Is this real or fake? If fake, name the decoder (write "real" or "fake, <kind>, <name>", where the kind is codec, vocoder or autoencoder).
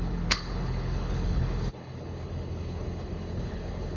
fake, codec, HILCodec